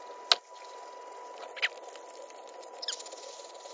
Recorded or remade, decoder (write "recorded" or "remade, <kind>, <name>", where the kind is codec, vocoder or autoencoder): recorded